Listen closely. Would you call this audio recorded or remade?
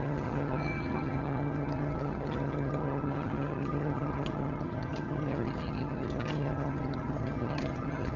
remade